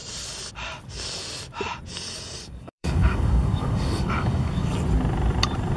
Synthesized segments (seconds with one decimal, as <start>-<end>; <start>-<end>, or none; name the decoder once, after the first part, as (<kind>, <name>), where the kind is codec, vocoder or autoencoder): 1.9-4.7 (codec, DAC)